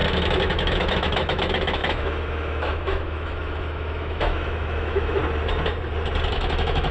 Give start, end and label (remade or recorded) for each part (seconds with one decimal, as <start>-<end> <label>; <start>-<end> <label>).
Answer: 0.0-5.2 remade; 5.2-6.3 recorded; 6.3-6.9 remade

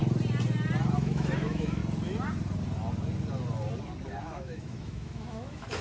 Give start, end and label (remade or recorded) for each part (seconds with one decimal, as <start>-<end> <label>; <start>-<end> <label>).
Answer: 0.0-0.9 recorded; 0.9-1.8 remade; 1.8-4.2 recorded; 4.2-5.8 remade

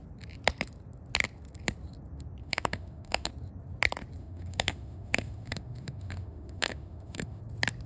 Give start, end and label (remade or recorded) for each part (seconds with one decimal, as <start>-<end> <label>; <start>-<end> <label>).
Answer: 0.0-2.4 recorded; 2.4-3.3 remade; 3.3-4.2 recorded; 4.2-7.4 remade; 7.4-7.9 recorded